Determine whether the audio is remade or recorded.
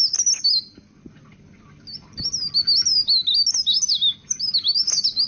recorded